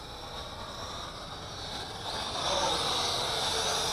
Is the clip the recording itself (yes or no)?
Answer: yes